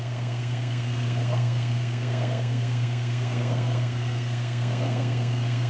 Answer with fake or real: fake